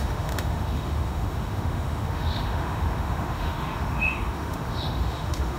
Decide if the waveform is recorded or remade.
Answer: remade